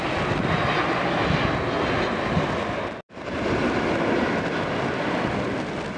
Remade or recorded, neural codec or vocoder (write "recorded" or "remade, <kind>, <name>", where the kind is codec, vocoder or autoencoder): recorded